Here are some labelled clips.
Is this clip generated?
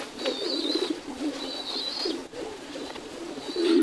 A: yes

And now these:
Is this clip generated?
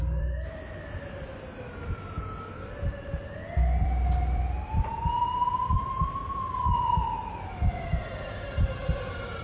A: no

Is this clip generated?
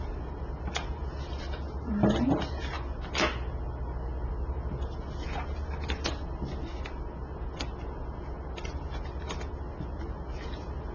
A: no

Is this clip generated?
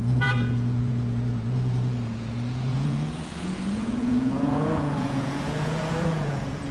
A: yes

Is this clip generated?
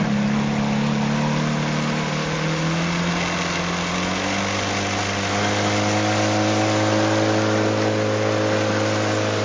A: no